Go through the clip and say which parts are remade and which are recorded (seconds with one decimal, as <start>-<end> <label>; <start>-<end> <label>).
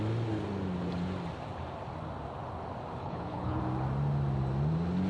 0.0-3.0 recorded; 3.0-3.6 remade; 3.6-5.1 recorded